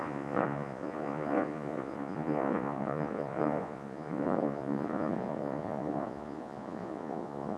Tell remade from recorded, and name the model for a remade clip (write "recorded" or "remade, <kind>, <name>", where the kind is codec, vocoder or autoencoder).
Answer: remade, vocoder, Vocos